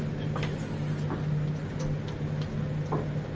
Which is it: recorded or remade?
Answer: recorded